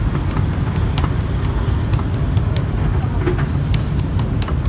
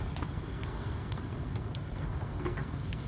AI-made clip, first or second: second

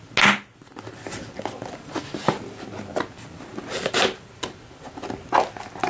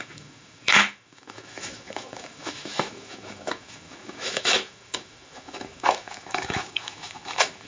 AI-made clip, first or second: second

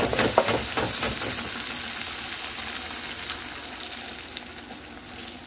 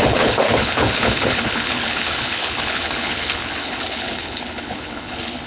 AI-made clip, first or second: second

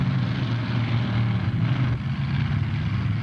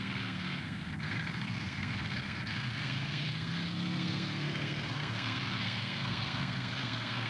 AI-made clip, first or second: second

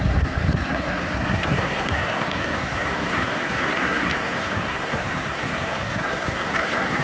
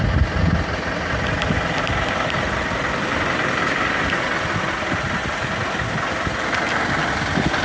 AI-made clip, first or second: first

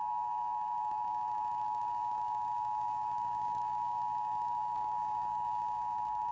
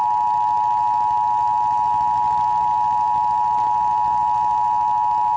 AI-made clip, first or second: first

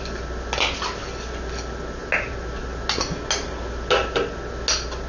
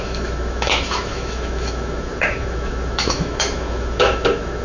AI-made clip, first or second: second